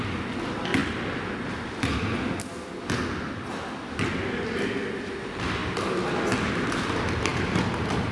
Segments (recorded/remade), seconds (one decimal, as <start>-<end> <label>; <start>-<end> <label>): 0.0-8.1 recorded